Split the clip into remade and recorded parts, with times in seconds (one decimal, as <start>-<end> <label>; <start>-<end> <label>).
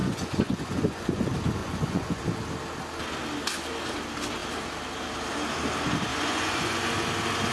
0.0-1.2 remade; 1.2-1.6 recorded; 1.6-2.2 remade; 2.2-6.1 recorded; 6.1-6.9 remade; 6.9-7.5 recorded